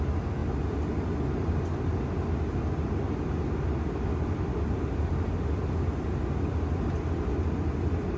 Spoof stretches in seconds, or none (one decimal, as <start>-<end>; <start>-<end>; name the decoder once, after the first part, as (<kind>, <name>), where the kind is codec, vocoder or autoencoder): none